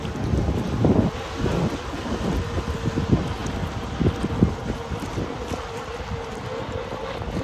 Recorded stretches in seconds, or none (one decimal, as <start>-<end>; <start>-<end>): 0.0-7.4